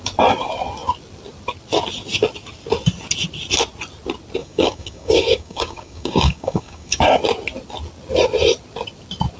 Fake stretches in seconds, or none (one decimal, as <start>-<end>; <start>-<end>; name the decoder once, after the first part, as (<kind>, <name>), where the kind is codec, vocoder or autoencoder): 4.4-7.2 (codec, DAC)